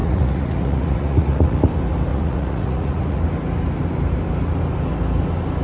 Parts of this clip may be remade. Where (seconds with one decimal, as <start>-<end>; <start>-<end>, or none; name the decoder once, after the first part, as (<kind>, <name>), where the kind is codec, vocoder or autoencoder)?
0.0-1.7 (vocoder, Vocos); 2.1-3.2